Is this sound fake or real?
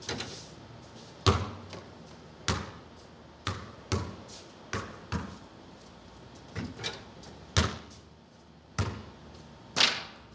real